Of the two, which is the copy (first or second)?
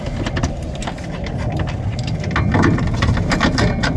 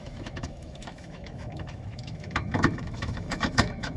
second